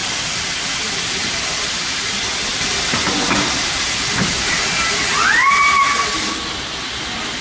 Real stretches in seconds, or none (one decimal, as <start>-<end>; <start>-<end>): 1.7-7.4